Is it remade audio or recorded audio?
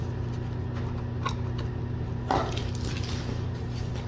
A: recorded